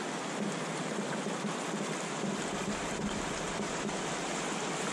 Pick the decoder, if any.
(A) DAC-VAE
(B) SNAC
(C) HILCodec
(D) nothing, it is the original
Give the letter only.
D